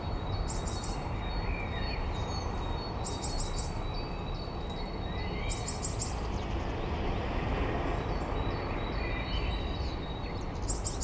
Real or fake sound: real